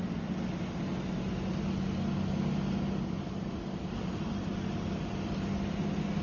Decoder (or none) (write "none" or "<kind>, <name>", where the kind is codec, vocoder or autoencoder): none